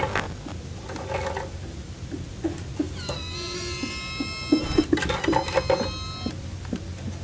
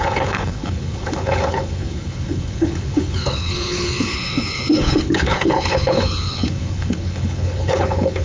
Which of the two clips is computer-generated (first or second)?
second